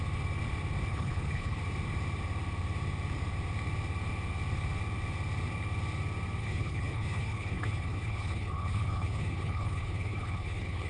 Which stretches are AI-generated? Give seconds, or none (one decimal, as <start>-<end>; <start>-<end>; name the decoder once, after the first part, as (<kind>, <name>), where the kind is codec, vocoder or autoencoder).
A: 0.9-1.6 (codec, HILCodec); 6.4-10.9

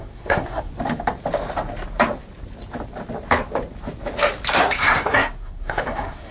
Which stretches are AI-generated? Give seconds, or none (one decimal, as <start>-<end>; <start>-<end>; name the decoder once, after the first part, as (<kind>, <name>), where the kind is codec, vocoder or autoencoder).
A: 0.0-0.7 (codec, SNAC); 4.5-6.3

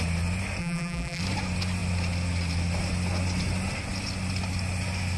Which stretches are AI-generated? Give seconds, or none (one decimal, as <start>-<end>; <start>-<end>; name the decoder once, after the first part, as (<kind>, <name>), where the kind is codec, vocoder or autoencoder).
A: 0.6-1.2 (vocoder, BigVGAN v2)

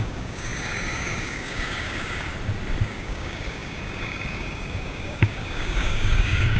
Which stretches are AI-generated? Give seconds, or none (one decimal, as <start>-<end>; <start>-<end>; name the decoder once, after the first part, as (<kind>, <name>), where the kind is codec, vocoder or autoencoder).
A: 0.0-2.3 (codec, DAC); 2.8-6.6

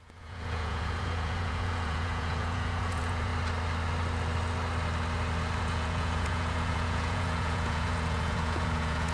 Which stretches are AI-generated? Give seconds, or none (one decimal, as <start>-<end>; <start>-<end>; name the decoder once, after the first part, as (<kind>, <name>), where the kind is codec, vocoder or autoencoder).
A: 0.0-3.3 (vocoder, Vocos); 5.6-9.1

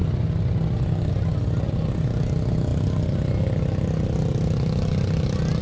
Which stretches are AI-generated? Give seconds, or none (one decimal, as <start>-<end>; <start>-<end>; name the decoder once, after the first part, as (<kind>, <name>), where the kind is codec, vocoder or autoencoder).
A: 2.7-3.4 (vocoder, BigVGAN v2)